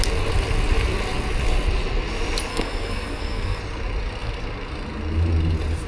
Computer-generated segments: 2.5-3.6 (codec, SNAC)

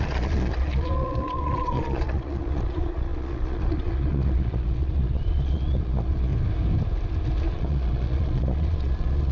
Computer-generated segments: 0.0-6.3 (vocoder, Vocos); 7.5-9.3

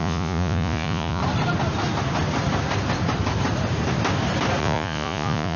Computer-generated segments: 0.0-1.2 (vocoder, Vocos); 4.6-5.6

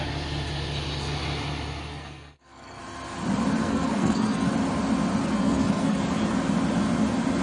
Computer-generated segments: 1.9-2.8 (codec, SNAC); 3.6-4.5; 5.2-6.0